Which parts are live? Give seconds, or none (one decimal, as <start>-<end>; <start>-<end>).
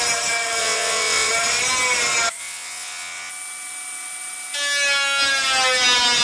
0.0-0.6; 1.3-2.4; 3.3-6.2